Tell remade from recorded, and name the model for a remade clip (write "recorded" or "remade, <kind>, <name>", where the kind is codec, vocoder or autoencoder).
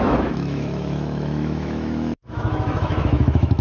remade, autoencoder, DAC-VAE